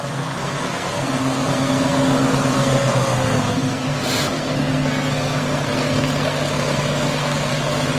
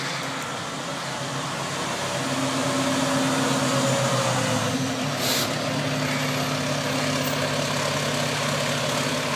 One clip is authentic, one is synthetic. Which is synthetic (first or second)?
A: first